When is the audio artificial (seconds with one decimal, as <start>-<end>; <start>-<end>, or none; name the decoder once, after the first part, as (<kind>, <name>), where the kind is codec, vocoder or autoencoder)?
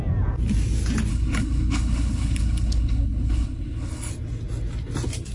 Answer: 1.1-4.1 (codec, HILCodec)